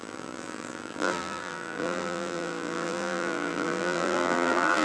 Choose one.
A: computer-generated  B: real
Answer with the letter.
A